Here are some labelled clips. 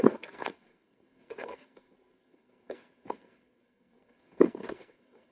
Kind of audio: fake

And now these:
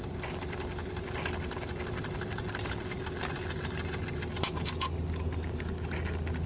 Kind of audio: real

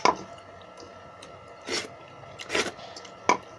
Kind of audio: real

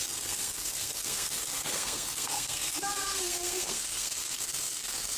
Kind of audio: fake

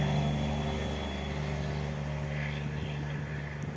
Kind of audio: real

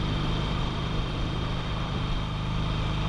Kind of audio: real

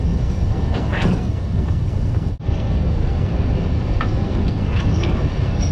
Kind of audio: fake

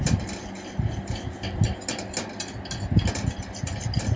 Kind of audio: real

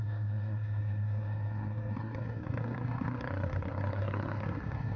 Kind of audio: fake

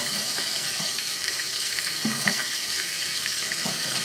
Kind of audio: fake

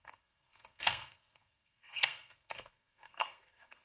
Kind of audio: fake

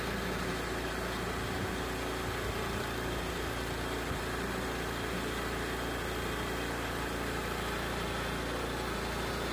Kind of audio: real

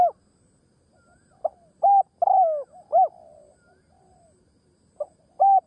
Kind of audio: real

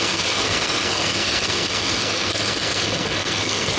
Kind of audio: fake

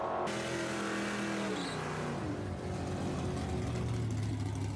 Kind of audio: real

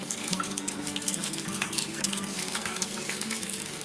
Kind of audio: fake